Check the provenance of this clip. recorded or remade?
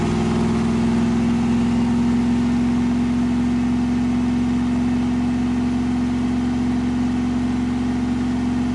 recorded